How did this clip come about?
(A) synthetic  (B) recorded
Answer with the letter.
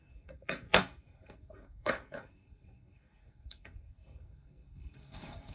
A